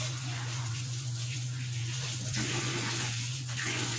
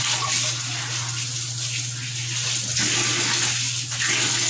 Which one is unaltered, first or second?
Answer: second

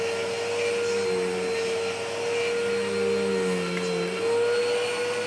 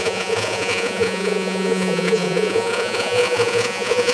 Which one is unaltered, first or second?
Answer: first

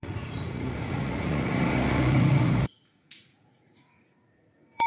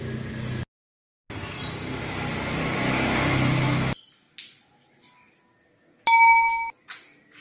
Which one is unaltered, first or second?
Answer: second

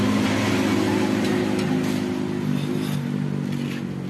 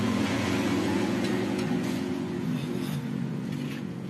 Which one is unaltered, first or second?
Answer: first